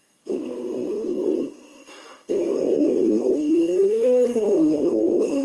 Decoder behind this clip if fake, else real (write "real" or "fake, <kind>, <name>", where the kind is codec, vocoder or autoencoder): fake, codec, SNAC